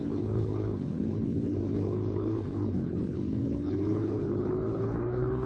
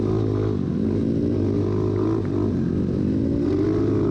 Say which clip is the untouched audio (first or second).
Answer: second